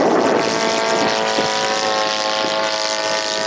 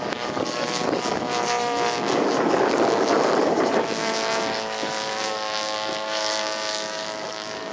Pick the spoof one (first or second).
second